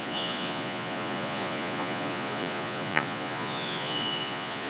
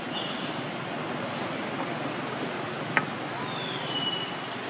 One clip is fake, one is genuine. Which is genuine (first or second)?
second